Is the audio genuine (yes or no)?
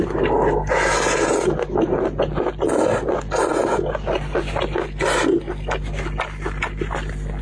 yes